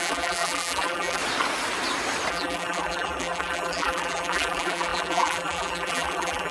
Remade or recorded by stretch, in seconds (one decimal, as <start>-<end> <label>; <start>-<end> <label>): 0.0-1.2 remade; 1.2-2.3 recorded; 2.3-6.5 remade